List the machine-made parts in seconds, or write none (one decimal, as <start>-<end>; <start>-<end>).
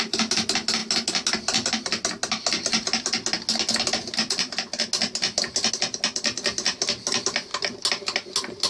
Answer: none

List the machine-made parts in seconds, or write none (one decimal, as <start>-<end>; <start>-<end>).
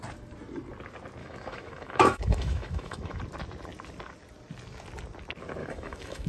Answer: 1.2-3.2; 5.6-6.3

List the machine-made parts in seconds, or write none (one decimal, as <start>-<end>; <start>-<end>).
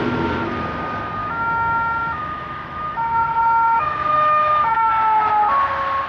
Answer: 1.2-4.9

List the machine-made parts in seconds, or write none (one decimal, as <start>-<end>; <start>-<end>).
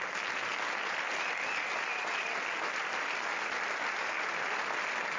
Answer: none